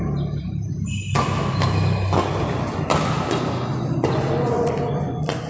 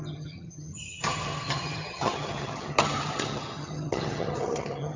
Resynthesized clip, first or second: second